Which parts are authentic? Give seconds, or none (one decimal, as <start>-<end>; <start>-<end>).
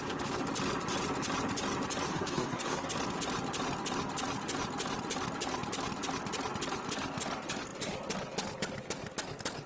0.0-2.1; 2.9-9.7